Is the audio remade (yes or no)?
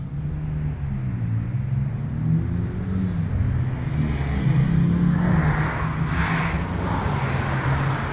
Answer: no